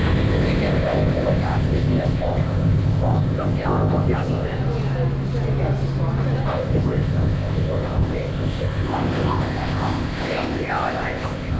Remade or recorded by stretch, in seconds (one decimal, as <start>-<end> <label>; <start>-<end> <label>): 0.0-4.6 remade; 4.6-6.5 recorded; 6.5-11.6 remade